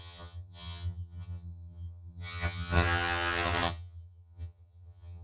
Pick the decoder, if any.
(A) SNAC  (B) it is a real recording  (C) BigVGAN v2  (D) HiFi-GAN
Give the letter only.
D